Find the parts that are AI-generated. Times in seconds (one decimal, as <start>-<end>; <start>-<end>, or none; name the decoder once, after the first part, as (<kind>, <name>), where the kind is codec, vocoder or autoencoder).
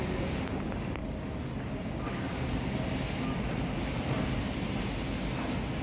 0.0-1.0 (vocoder, BigVGAN v2); 2.1-5.2